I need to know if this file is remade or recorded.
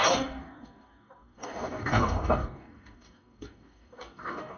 remade